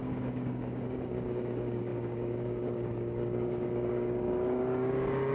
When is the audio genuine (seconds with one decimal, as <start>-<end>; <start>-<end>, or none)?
none